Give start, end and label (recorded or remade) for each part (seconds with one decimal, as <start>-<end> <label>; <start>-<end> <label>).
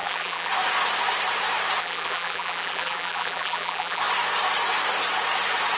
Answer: 0.0-0.5 remade; 0.5-1.8 recorded; 1.8-4.0 remade; 4.0-5.8 recorded